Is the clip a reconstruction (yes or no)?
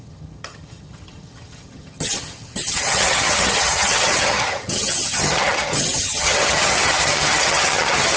yes